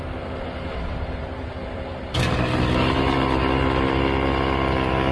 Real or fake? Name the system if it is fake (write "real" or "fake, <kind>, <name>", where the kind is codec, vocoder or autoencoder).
real